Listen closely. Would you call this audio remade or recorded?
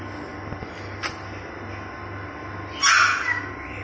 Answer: recorded